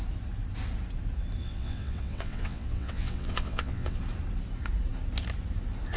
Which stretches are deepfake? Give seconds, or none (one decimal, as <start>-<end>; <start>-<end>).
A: 1.4-4.0